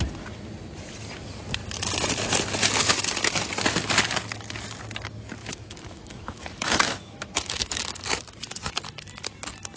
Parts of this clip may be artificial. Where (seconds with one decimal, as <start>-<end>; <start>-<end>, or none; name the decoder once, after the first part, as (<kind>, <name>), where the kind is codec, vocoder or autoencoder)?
5.4-7.8 (autoencoder, DAC-VAE)